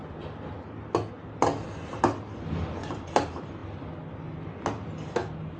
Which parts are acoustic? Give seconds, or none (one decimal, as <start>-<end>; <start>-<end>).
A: 0.0-5.6